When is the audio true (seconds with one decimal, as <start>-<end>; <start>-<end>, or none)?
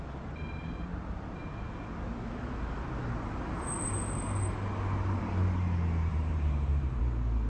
0.0-6.1; 7.0-7.5